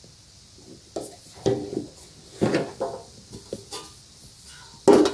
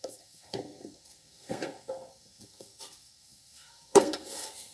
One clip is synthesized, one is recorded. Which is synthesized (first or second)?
second